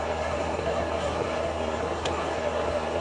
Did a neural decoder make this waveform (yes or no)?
yes